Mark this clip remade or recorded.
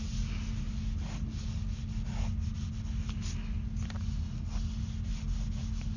recorded